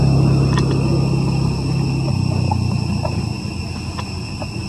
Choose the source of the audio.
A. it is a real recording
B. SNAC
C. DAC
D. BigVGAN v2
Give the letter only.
A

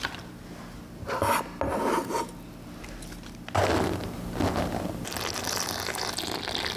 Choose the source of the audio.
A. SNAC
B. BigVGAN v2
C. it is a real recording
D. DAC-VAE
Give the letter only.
C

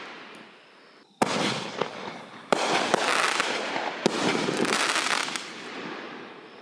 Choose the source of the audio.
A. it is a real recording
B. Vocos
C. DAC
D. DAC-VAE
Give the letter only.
A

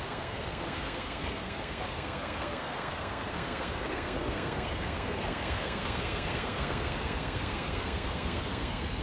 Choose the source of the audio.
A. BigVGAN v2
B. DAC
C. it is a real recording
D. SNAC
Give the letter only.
D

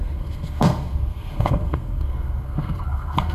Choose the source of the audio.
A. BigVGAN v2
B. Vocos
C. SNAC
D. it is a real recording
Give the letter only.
C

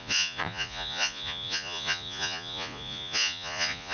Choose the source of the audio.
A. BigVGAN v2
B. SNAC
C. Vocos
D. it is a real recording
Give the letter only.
C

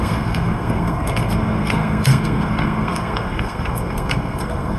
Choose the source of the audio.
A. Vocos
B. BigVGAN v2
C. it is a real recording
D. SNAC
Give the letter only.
D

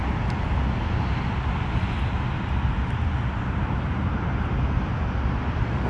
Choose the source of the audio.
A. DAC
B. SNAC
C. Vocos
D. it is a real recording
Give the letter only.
D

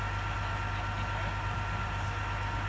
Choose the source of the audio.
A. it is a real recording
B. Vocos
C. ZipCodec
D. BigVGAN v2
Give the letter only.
A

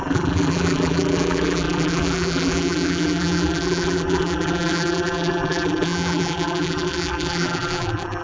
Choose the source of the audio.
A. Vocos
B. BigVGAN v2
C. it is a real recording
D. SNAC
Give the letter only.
B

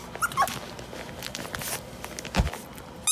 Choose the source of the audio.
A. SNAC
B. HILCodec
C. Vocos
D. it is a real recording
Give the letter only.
D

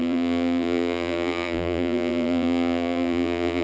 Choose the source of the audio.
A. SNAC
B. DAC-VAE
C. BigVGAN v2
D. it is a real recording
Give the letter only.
C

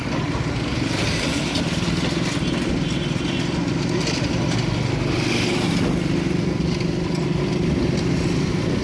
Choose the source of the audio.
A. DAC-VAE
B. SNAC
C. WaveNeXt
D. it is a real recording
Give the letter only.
D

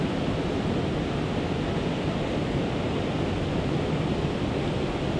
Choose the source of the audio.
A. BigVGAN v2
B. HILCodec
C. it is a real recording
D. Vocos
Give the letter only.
C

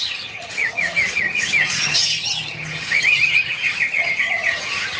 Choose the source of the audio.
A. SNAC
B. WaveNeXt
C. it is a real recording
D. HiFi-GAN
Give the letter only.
D